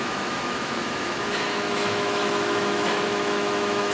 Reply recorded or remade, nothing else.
remade